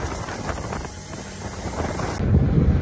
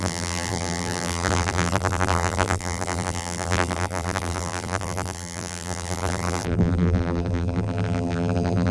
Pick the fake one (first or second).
second